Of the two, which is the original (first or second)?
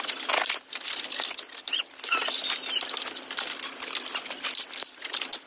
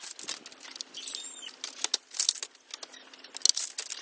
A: second